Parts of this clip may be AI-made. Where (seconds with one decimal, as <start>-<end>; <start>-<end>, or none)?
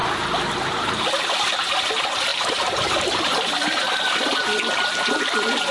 none